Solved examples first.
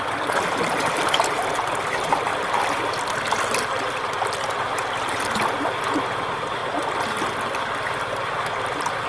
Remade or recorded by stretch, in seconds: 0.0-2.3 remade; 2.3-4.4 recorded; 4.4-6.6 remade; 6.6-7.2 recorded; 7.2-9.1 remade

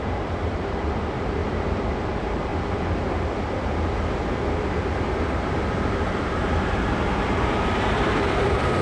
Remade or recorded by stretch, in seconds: 0.0-1.4 remade; 1.4-2.1 recorded; 2.1-2.5 remade; 2.5-4.8 recorded; 4.8-8.8 remade

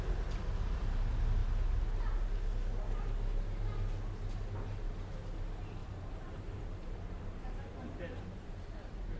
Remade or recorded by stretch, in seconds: 0.0-5.8 recorded; 5.8-9.2 remade

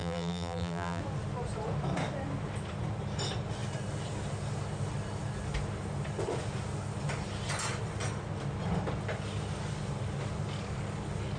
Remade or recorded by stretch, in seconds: 0.0-1.0 remade; 1.0-11.4 recorded

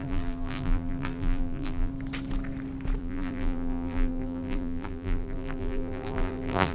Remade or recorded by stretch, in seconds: 0.0-1.9 remade; 1.9-3.0 recorded; 3.0-6.7 remade